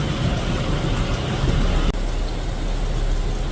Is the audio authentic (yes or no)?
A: yes